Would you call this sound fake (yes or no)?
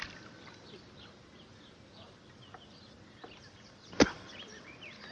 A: no